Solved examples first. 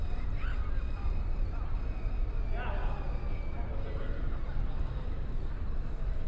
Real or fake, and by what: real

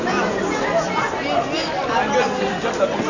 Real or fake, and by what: real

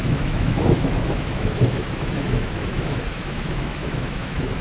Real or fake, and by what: fake, autoencoder, DAC-VAE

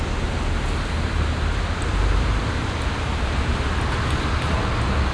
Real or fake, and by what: real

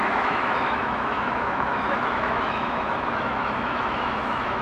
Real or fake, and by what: fake, autoencoder, DAC-VAE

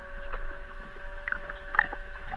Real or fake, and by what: fake, autoencoder, DAC-VAE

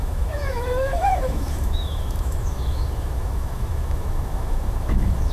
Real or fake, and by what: fake, autoencoder, DAC-VAE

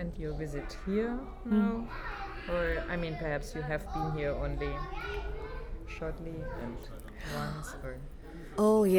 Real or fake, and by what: real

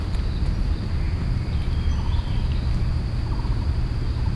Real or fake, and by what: real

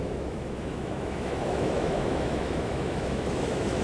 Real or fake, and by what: fake, autoencoder, DAC-VAE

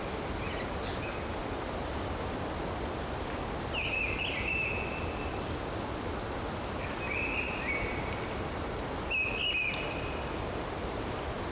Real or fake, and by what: real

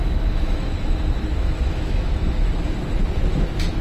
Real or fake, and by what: fake, autoencoder, DAC-VAE